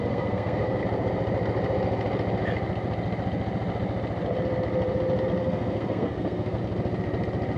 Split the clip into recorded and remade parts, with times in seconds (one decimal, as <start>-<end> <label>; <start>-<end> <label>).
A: 0.0-0.8 remade; 0.8-5.4 recorded; 5.4-6.6 remade; 6.6-7.6 recorded